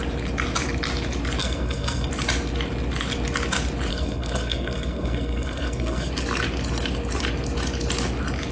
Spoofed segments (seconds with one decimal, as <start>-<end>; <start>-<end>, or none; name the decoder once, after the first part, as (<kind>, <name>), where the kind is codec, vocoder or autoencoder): 1.4-2.1 (codec, SNAC); 3.9-6.1